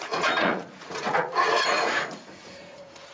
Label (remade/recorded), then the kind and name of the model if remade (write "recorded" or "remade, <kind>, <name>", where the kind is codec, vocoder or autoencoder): remade, vocoder, Vocos